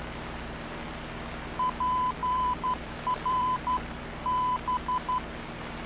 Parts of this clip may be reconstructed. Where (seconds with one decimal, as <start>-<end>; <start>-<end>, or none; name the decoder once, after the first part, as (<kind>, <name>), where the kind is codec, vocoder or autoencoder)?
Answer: 2.2-4.1 (vocoder, BigVGAN v2)